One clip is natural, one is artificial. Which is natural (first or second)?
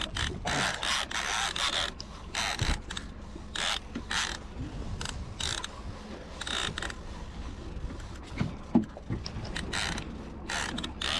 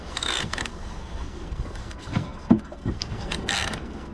first